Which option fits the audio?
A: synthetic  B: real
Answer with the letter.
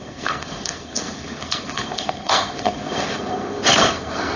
A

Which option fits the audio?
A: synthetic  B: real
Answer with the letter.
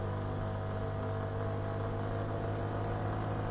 B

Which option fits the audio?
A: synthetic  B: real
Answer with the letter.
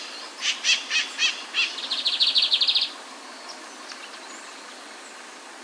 B